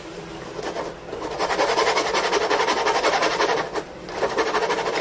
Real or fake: real